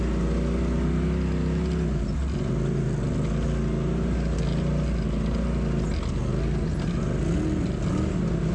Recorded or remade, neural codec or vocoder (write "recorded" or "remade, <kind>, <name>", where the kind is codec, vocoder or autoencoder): recorded